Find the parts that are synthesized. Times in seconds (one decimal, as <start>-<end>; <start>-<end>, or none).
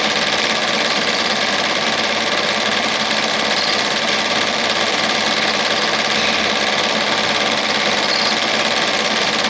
0.6-5.3